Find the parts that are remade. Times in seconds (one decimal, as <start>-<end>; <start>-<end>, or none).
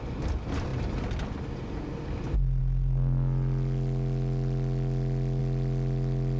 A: none